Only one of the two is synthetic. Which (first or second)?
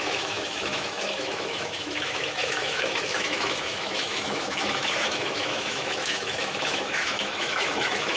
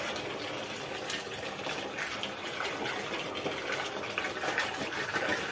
first